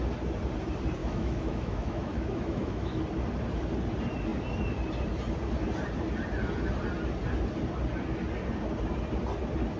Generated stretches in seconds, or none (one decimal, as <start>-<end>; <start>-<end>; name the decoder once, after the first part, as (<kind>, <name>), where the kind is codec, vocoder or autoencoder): 1.0-3.0 (autoencoder, DAC-VAE)